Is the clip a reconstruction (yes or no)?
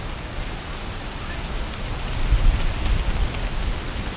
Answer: no